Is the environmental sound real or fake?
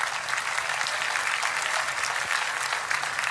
real